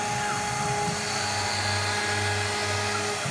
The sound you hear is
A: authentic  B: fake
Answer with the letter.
A